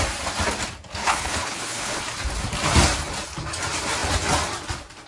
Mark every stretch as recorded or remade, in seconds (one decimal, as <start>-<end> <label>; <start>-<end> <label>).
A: 0.0-1.0 recorded; 1.0-2.0 remade; 2.0-5.1 recorded